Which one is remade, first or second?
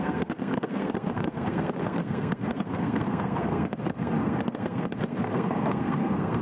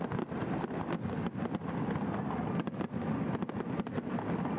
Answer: first